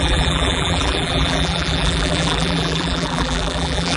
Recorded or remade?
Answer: remade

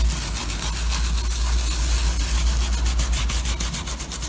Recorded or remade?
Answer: recorded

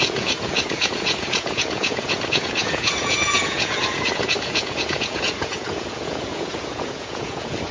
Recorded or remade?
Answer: remade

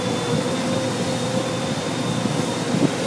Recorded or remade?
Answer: recorded